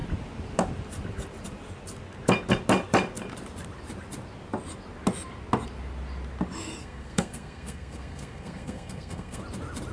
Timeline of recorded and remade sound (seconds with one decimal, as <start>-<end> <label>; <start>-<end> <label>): 0.0-6.8 recorded; 6.8-9.4 remade; 9.4-9.9 recorded